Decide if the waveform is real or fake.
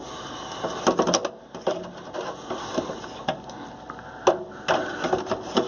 real